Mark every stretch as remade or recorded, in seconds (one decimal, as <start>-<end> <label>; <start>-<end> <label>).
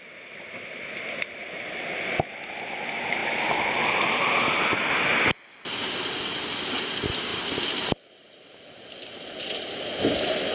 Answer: 0.0-10.5 recorded